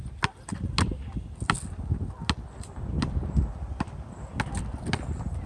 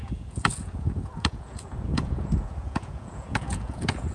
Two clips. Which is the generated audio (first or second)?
second